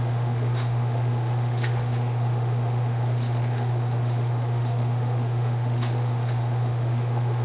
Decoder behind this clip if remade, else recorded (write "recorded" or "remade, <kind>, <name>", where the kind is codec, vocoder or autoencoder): remade, autoencoder, DAC-VAE